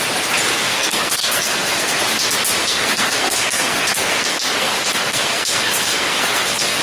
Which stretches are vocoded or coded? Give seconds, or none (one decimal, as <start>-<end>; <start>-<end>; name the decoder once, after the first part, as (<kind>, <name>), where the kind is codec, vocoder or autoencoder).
0.5-2.0 (codec, SNAC); 2.6-6.8